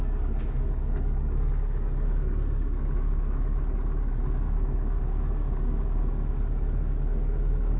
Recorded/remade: remade